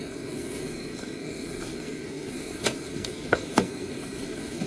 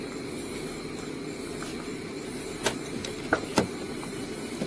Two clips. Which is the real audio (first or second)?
second